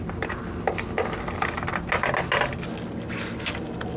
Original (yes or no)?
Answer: yes